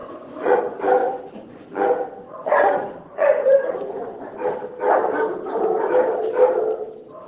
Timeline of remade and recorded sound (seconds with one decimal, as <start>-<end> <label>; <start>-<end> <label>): 0.0-0.6 remade; 0.6-1.0 recorded; 1.0-4.2 remade; 4.2-7.3 recorded